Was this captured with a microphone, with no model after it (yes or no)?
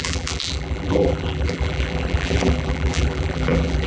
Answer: no